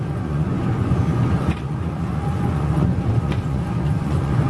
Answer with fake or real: fake